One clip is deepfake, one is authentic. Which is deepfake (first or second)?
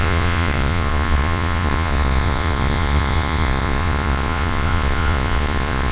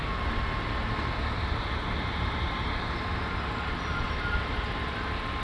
first